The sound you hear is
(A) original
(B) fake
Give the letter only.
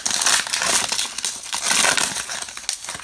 A